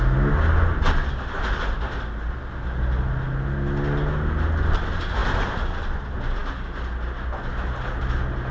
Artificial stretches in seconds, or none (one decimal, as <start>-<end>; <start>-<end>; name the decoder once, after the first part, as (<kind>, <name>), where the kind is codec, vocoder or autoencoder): none

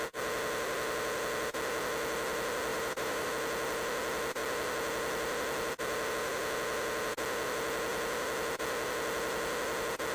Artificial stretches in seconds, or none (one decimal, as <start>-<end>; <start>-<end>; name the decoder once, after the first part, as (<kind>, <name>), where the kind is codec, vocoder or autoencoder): 2.7-3.3 (vocoder, BigVGAN v2)

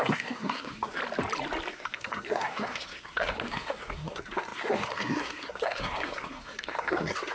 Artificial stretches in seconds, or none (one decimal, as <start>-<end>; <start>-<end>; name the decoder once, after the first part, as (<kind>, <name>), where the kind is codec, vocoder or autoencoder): 0.0-1.0 (codec, SNAC); 1.7-7.3

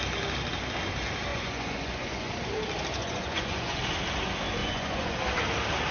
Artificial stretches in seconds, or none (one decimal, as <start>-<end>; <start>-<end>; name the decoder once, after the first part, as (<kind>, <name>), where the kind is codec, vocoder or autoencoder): 1.3-2.3 (vocoder, Vocos); 3.0-3.8; 4.6-5.2

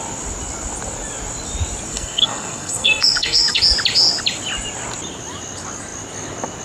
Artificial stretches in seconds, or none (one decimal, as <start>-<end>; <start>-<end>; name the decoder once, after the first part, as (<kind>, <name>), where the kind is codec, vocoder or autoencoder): 1.9-3.6 (codec, SNAC)

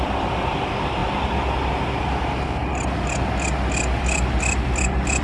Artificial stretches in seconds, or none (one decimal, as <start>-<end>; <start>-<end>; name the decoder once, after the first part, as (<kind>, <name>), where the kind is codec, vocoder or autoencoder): none

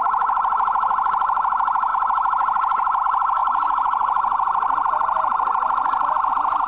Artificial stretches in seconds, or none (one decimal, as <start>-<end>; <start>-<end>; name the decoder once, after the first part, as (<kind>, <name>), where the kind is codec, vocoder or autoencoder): 3.4-6.3 (vocoder, BigVGAN v2)